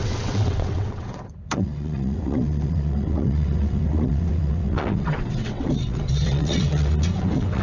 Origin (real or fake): fake